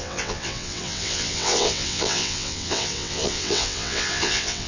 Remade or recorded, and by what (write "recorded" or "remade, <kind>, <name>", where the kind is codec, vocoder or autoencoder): remade, vocoder, WaveNeXt